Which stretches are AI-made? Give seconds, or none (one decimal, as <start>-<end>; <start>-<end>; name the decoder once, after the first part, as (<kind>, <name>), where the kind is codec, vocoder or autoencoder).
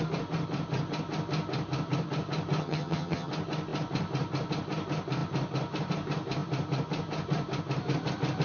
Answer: 2.6-3.3 (vocoder, HiFi-GAN)